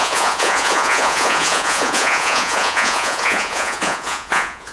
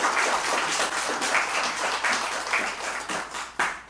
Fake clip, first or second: first